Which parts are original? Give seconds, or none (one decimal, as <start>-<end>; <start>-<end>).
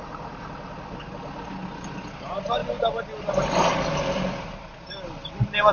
0.0-5.7